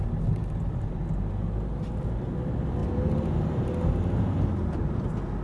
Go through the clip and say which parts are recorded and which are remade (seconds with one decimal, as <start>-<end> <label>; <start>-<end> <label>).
0.0-5.4 recorded